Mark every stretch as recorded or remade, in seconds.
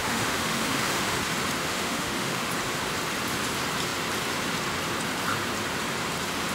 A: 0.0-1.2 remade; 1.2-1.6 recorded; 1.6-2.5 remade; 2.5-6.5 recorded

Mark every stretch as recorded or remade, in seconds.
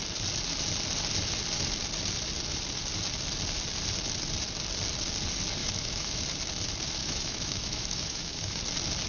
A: 0.0-5.6 recorded; 5.6-6.2 remade; 6.2-7.0 recorded; 7.0-8.6 remade; 8.6-9.1 recorded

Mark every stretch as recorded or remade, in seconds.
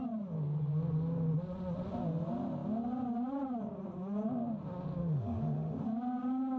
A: 0.0-5.0 recorded; 5.0-5.8 remade; 5.8-6.6 recorded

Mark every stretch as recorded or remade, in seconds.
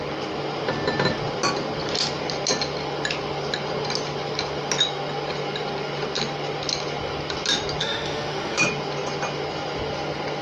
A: 0.0-7.8 recorded; 7.8-8.6 remade; 8.6-10.4 recorded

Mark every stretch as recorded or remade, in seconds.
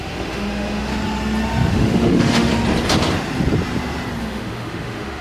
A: 0.0-0.9 remade; 0.9-1.7 recorded; 1.7-2.5 remade; 2.5-4.2 recorded; 4.2-5.2 remade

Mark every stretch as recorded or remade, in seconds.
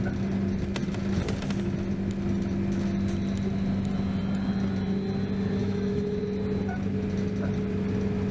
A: 0.0-5.6 recorded; 5.6-6.2 remade; 6.2-8.3 recorded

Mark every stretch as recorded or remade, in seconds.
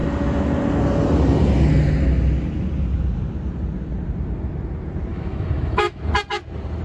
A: 0.0-5.1 recorded; 5.1-6.0 remade; 6.0-6.8 recorded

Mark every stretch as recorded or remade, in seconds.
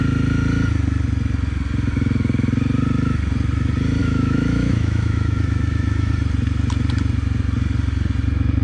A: 0.0-4.0 recorded; 4.0-6.1 remade; 6.1-8.6 recorded